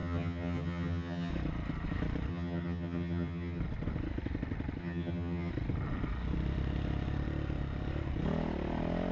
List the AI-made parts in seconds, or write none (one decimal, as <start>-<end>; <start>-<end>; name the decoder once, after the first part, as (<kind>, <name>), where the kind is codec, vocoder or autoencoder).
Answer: 0.0-1.3 (vocoder, HiFi-GAN); 2.3-3.6; 4.8-5.5